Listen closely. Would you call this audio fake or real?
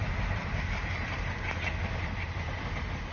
real